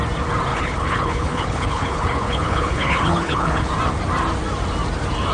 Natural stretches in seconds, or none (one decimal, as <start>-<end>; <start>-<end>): 0.0-0.5; 3.7-5.3